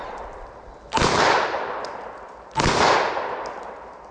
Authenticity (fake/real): real